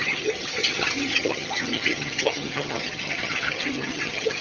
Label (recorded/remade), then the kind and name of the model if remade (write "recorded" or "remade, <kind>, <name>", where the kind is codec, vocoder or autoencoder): remade, vocoder, HiFi-GAN